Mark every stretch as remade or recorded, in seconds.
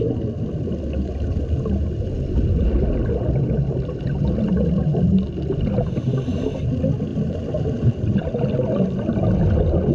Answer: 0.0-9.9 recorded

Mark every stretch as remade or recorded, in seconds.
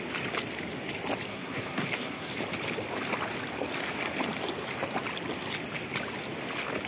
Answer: 0.0-1.3 recorded; 1.3-2.3 remade; 2.3-6.9 recorded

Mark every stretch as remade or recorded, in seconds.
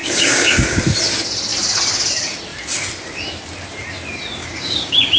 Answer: 0.0-0.8 remade; 0.8-4.4 recorded; 4.4-5.2 remade